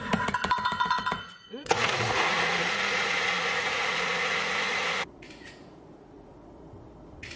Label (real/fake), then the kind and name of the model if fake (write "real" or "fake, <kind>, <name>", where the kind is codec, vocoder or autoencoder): fake, vocoder, Vocos